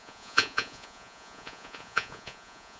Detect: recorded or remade remade